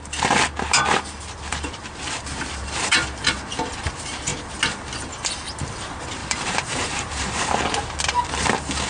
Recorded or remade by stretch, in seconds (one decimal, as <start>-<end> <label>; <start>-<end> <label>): 0.0-1.5 recorded; 1.5-3.9 remade; 3.9-6.2 recorded; 6.2-7.5 remade; 7.5-8.9 recorded